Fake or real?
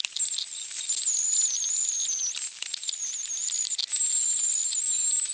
real